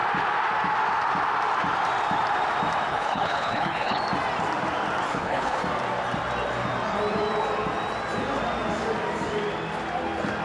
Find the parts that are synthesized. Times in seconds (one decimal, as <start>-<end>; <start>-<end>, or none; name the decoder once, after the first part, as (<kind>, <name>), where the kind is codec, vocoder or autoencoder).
2.9-4.0 (codec, HILCodec); 5.1-5.6